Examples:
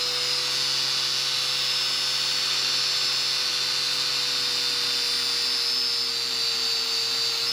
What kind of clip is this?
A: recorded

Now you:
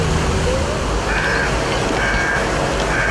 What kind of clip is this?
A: recorded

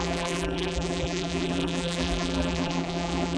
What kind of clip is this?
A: remade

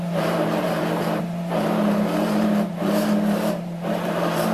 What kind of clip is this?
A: remade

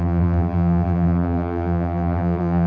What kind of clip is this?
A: remade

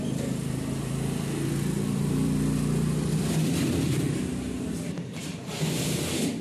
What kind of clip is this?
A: remade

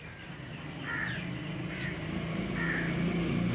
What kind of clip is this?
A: remade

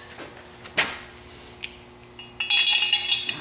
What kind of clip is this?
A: recorded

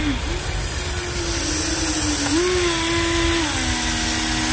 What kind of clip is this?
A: recorded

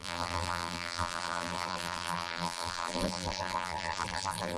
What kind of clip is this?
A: remade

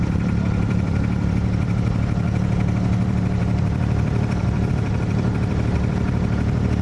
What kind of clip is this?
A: remade